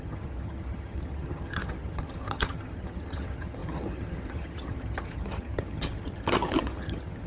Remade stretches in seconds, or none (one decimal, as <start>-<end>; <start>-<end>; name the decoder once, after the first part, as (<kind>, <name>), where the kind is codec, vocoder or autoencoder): 0.0-7.3 (vocoder, HiFi-GAN)